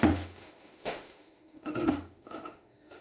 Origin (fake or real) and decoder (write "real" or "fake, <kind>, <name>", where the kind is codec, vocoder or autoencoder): fake, autoencoder, DAC-VAE